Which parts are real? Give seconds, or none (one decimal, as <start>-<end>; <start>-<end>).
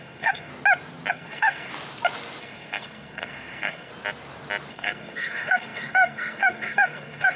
0.5-1.1; 1.7-2.4; 3.9-4.7